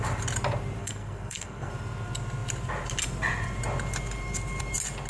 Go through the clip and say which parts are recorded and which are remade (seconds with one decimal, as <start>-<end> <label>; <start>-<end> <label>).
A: 0.0-0.8 recorded; 0.8-1.7 remade; 1.7-5.1 recorded